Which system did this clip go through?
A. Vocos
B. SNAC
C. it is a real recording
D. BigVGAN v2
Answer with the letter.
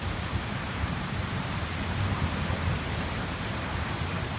D